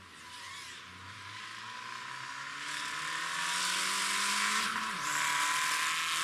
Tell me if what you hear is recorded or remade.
recorded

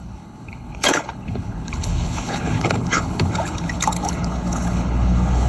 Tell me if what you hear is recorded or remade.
remade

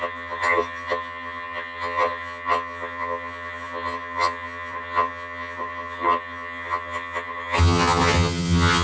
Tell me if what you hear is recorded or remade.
remade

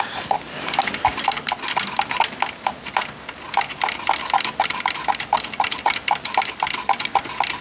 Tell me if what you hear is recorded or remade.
recorded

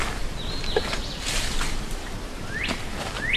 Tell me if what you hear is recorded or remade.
recorded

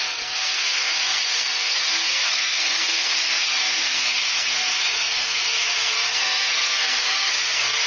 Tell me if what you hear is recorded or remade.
remade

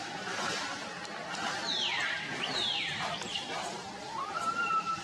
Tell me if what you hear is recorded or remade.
remade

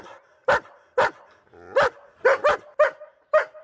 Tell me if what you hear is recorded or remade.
recorded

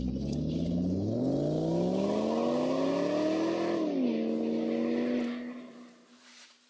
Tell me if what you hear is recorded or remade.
recorded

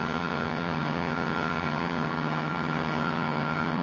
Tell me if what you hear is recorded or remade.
remade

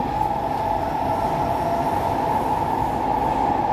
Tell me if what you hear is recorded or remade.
recorded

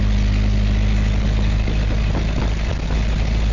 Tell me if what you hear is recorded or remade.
recorded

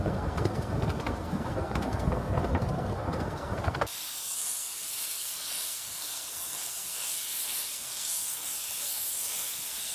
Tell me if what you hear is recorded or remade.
remade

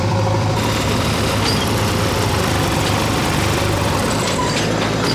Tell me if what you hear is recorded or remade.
remade